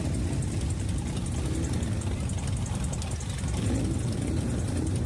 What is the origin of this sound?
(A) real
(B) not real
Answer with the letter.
A